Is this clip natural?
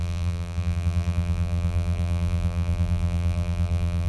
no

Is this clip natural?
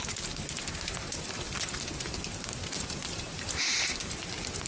no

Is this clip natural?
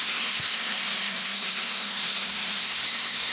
no